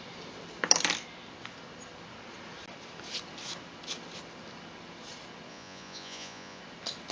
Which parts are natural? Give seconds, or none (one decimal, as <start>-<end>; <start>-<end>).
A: 0.0-5.5; 6.6-7.1